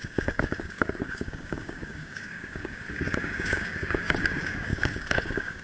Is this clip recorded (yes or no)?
no